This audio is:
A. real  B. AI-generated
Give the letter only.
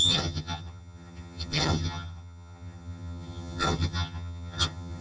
B